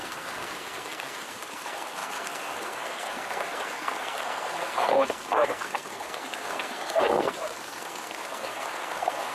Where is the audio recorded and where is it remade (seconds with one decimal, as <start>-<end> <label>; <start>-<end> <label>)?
0.0-9.3 remade